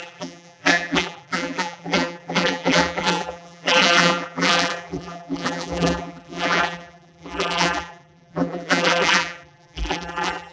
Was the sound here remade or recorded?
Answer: remade